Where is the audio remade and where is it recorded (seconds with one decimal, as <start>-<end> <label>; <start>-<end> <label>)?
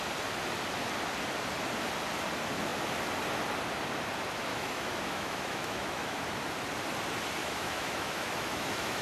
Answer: 0.0-4.5 recorded; 4.5-6.2 remade; 6.2-7.4 recorded; 7.4-9.0 remade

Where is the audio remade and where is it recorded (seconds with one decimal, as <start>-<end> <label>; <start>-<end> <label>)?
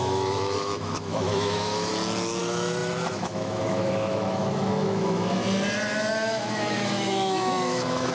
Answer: 0.0-1.9 remade; 1.9-2.4 recorded; 2.4-5.4 remade; 5.4-6.1 recorded; 6.1-8.1 remade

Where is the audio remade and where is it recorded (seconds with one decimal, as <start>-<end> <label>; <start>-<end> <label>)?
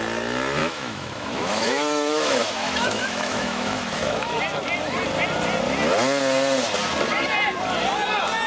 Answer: 0.0-0.6 recorded; 0.6-4.4 remade; 4.4-8.5 recorded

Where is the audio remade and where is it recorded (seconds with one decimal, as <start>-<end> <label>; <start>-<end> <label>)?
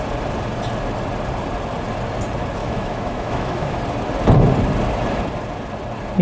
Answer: 0.0-2.6 recorded; 2.6-3.8 remade; 3.8-6.2 recorded